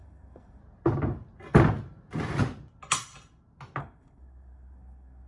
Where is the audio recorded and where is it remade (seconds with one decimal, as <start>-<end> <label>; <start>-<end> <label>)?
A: 0.0-0.6 remade; 0.6-3.8 recorded; 3.8-5.3 remade

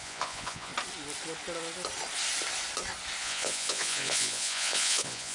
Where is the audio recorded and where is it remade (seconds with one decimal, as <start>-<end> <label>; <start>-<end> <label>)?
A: 0.0-0.7 remade; 0.7-3.2 recorded; 3.2-5.3 remade

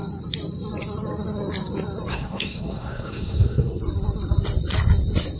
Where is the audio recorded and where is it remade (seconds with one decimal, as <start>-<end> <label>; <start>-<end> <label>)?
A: 0.0-2.1 recorded; 2.1-3.8 remade; 3.8-5.4 recorded

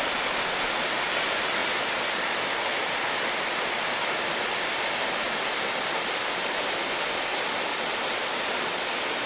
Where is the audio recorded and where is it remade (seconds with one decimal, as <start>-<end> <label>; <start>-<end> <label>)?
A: 0.0-1.6 remade; 1.6-4.1 recorded; 4.1-9.3 remade

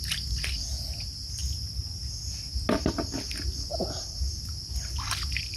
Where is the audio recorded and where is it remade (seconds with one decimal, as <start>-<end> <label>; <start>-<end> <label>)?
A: 0.0-5.6 recorded

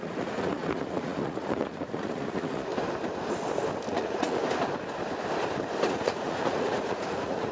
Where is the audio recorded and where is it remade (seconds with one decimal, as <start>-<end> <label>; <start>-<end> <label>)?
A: 0.0-2.7 remade; 2.7-3.9 recorded; 3.9-4.4 remade; 4.4-5.9 recorded; 5.9-7.5 remade